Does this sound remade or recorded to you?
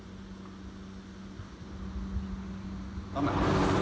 recorded